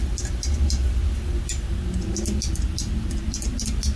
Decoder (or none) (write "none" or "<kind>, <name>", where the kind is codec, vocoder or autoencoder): none